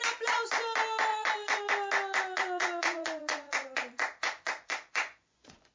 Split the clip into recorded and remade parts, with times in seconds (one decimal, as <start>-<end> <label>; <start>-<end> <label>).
0.0-1.1 recorded; 1.1-1.6 remade; 1.6-2.2 recorded; 2.2-5.7 remade